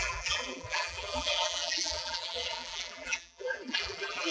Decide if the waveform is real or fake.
fake